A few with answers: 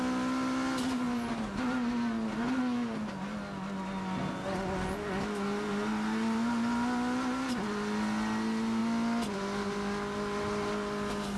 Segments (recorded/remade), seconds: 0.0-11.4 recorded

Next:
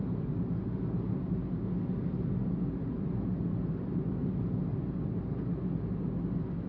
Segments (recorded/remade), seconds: 0.0-6.7 recorded

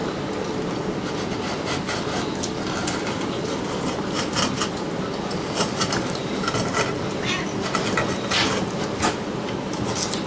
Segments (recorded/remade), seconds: 0.0-10.3 recorded

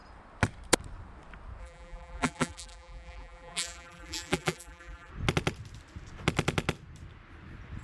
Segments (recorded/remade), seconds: 0.0-1.6 recorded; 1.6-5.1 remade; 5.1-7.8 recorded

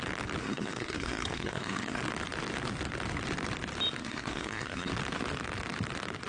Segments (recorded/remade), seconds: 0.0-0.4 recorded; 0.4-2.0 remade; 2.0-4.0 recorded; 4.0-4.9 remade; 4.9-6.3 recorded